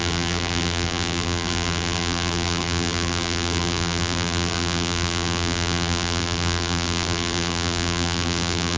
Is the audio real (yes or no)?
no